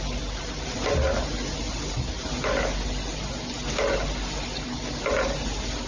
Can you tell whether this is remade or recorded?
recorded